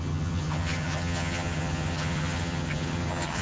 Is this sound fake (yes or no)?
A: yes